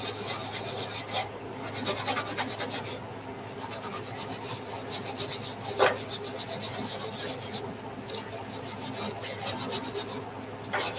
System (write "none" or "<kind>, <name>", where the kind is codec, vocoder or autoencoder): none